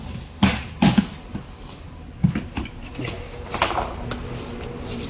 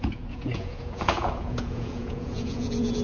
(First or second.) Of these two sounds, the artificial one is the second